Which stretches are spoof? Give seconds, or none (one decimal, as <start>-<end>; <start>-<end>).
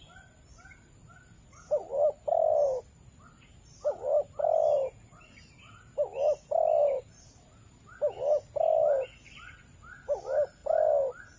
none